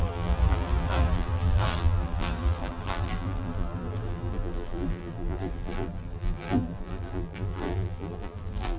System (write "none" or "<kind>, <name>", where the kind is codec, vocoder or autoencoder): vocoder, BigVGAN v2